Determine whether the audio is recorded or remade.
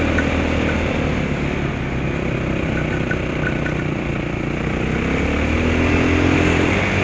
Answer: recorded